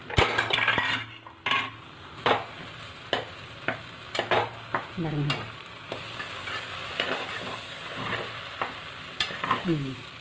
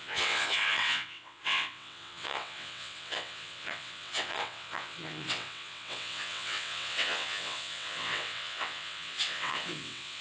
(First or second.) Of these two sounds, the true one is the first